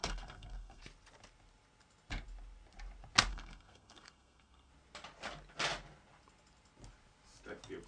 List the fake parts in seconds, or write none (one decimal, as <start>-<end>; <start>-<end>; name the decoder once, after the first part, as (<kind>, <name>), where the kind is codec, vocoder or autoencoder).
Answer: 0.0-0.8 (codec, SNAC); 3.3-4.7